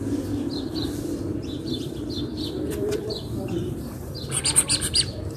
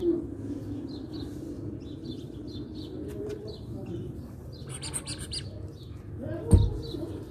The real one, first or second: second